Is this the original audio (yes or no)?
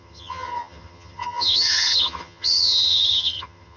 no